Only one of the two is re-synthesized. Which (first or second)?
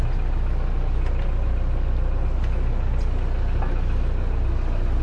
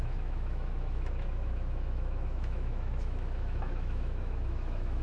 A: second